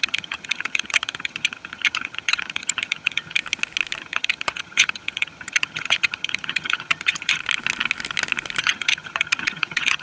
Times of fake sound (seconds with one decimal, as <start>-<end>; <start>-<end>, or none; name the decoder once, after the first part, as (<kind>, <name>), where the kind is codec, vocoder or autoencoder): 0.0-3.4 (vocoder, HiFi-GAN); 4.0-7.4; 8.6-10.0